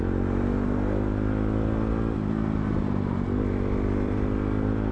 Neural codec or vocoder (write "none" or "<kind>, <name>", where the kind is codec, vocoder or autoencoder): none